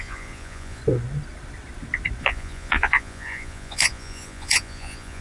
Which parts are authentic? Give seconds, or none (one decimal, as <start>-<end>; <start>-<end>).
0.8-2.2

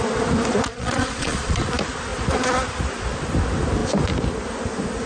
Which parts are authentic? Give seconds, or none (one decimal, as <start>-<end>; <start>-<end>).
0.0-0.7; 1.6-5.1

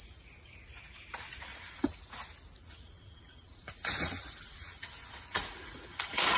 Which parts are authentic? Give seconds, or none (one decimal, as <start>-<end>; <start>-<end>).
0.0-1.5; 2.0-2.6